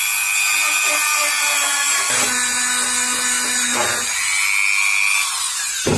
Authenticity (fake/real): real